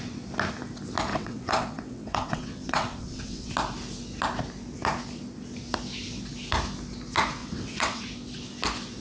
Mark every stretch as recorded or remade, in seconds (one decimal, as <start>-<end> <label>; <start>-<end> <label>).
0.0-1.1 recorded; 1.1-3.5 remade; 3.5-7.4 recorded; 7.4-8.0 remade; 8.0-9.0 recorded